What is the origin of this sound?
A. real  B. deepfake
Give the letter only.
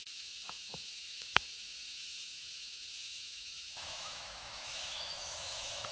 B